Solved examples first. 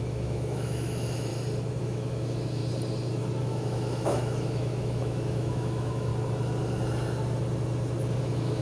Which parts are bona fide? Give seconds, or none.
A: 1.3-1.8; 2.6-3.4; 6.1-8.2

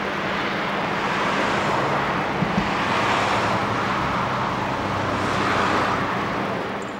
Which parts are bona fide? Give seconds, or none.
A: 0.0-7.0

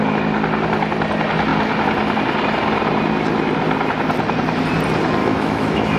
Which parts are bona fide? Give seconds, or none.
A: 0.0-5.2

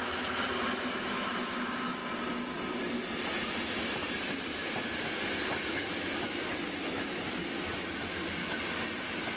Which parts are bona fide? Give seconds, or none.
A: 0.4-0.9; 2.0-5.7; 8.4-9.4